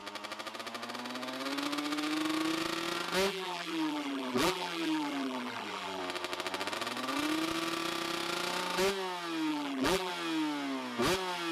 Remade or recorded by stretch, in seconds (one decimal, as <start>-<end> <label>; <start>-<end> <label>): 0.0-3.3 recorded; 3.3-6.0 remade; 6.0-9.5 recorded; 9.5-10.1 remade; 10.1-11.5 recorded